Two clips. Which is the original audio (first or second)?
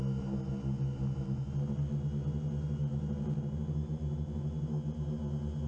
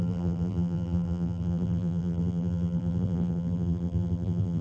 first